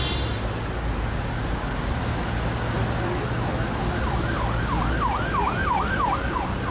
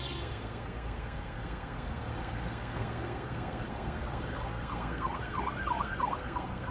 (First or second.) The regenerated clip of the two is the second